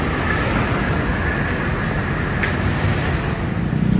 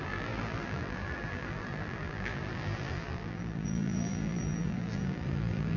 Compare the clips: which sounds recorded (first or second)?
first